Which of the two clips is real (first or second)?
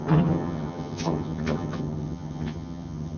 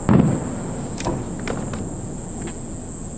second